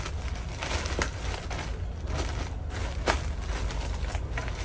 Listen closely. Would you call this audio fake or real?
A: real